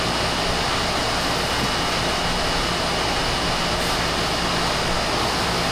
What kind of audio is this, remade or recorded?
recorded